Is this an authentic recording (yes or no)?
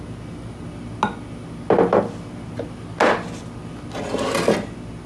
yes